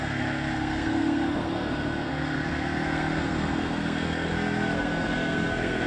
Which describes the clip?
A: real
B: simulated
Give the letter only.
B